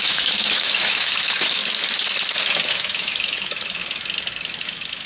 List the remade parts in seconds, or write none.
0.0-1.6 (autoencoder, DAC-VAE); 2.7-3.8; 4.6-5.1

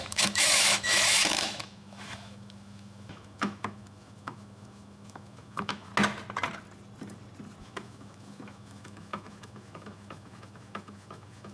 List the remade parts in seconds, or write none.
0.0-5.9 (autoencoder, DAC-VAE); 7.6-11.5